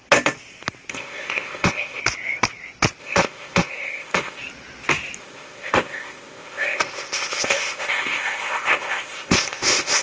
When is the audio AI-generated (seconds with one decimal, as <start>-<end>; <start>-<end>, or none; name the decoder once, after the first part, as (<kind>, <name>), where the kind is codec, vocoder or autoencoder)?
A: 0.9-2.0 (codec, ZipCodec); 3.0-4.4; 5.2-10.0